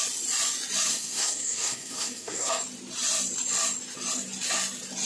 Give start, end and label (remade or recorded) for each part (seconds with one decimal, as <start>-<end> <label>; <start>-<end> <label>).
0.0-0.9 recorded; 0.9-2.5 remade; 2.5-5.1 recorded